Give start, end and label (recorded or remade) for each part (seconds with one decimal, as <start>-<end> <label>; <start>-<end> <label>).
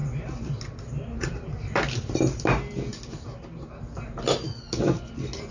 0.0-5.5 recorded